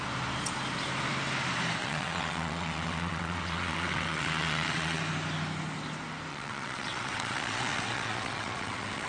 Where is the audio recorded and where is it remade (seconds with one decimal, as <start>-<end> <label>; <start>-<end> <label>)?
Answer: 0.0-1.8 recorded; 1.8-5.0 remade; 5.0-6.3 recorded; 6.3-9.1 remade